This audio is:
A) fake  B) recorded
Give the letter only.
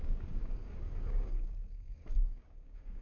A